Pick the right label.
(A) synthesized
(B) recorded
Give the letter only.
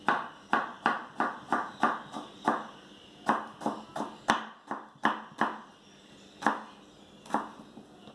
B